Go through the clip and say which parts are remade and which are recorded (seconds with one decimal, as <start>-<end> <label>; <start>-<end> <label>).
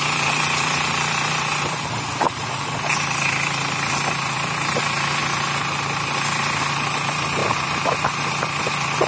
0.0-5.2 remade; 5.2-6.6 recorded; 6.6-9.1 remade